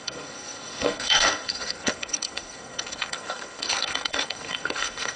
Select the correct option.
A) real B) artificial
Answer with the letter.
B